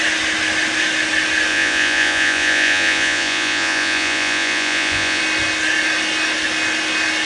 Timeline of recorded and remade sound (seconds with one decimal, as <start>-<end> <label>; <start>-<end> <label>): 0.0-1.5 recorded; 1.5-5.2 remade; 5.2-7.3 recorded